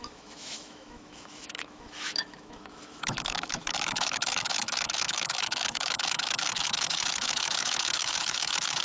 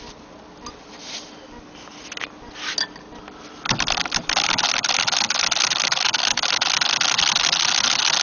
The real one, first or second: second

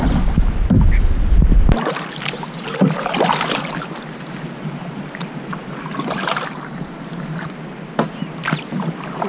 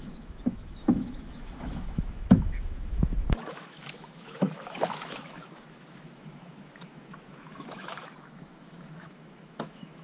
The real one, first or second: first